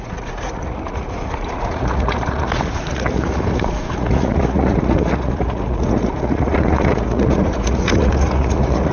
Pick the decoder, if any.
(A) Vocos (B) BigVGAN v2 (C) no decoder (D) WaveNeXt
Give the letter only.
A